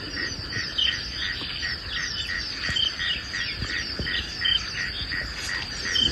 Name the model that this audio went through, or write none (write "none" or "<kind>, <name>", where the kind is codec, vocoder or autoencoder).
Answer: none